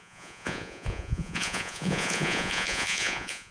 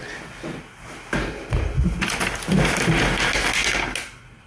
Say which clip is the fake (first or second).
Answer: first